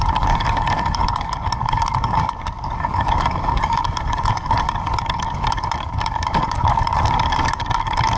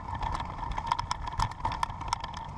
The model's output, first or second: first